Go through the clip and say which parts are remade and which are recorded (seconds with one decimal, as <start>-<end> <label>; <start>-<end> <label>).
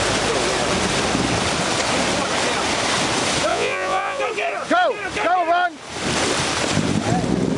0.0-3.5 recorded; 3.5-4.2 remade; 4.2-7.6 recorded